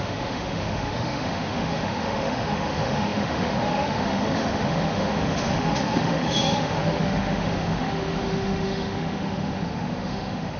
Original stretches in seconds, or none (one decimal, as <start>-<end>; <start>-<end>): none